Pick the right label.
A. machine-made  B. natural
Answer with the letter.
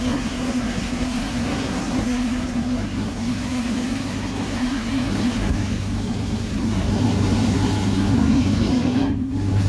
A